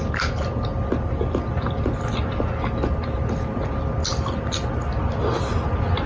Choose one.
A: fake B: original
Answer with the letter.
B